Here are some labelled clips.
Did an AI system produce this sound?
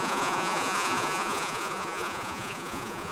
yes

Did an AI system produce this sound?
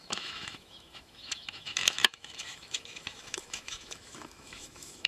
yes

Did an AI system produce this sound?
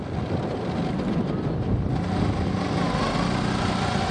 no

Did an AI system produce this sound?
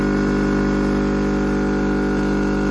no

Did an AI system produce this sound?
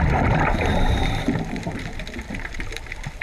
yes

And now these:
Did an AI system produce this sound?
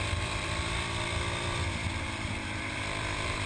yes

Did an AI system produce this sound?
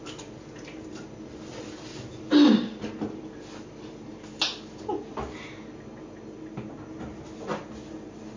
no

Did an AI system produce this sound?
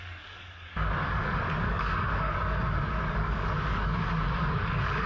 yes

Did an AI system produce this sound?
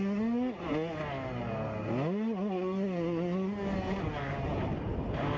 no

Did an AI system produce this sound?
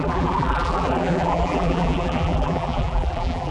yes